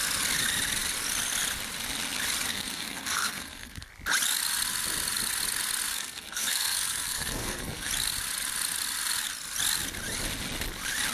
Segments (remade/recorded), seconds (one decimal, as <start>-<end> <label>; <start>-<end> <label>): 0.0-2.5 recorded; 2.5-3.9 remade; 3.9-5.9 recorded; 5.9-7.9 remade; 7.9-11.1 recorded